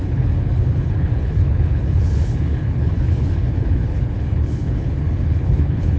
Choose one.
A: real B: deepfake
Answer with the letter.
B